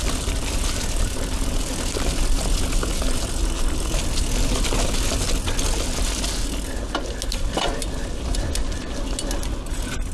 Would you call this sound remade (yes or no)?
no